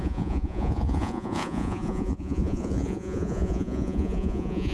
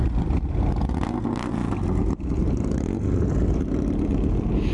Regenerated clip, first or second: first